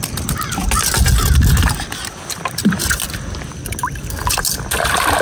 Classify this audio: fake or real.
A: real